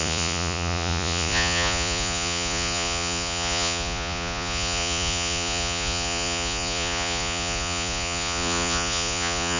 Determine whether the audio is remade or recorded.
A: remade